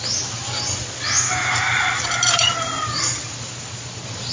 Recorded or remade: recorded